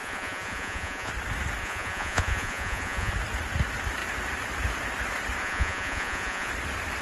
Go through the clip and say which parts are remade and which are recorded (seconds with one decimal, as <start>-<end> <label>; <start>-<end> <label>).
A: 0.0-1.1 remade; 1.1-1.6 recorded; 1.6-3.1 remade; 3.1-5.4 recorded; 5.4-6.5 remade; 6.5-7.0 recorded